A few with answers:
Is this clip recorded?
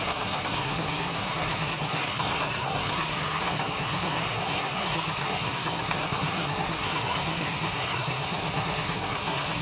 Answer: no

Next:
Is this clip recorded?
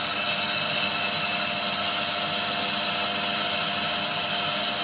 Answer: yes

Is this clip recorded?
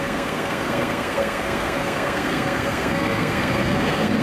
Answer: no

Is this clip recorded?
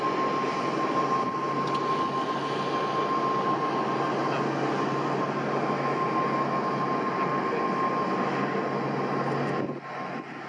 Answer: yes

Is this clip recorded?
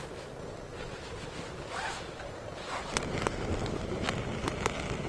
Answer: yes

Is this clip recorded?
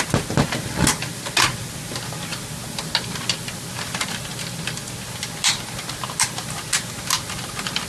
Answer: yes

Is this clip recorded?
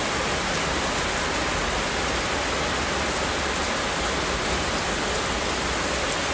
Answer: yes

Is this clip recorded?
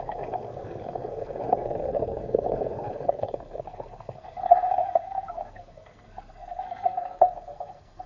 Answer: no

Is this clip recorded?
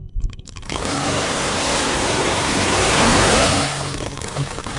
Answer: no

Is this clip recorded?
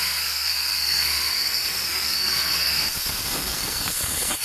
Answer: no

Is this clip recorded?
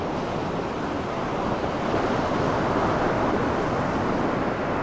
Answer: yes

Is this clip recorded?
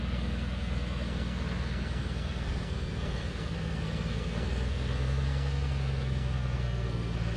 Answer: no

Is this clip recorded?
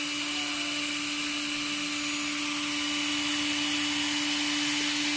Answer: yes